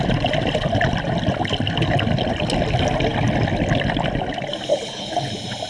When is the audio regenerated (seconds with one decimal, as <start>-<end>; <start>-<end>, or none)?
4.7-5.3